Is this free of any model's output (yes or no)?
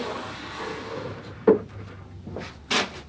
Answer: yes